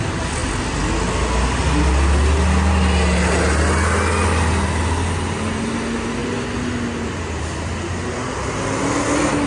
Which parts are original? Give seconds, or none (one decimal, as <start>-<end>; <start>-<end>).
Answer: 0.0-9.5

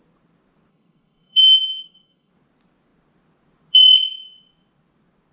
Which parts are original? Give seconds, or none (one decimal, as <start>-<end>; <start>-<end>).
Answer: 0.0-0.7; 2.3-5.3

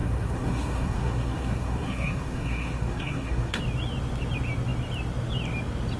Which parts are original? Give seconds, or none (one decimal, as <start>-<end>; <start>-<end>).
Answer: 3.6-6.0

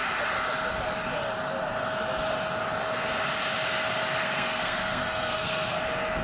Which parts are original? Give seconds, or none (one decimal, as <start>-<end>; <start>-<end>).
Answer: 0.0-4.2; 5.8-6.2

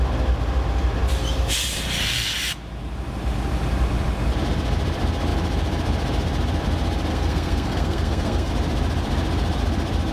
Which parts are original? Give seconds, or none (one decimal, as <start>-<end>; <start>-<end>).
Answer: 0.0-7.1; 8.5-10.1

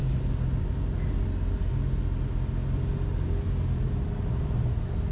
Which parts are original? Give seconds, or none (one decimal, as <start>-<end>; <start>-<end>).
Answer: 0.0-5.1

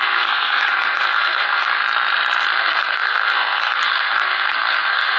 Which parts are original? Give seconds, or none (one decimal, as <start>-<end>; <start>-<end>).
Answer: 1.8-2.6